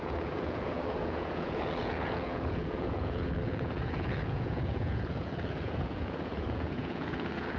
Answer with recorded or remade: remade